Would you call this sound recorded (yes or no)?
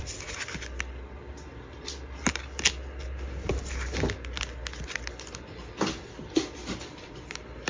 yes